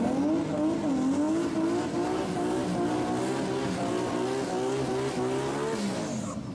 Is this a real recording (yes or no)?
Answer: yes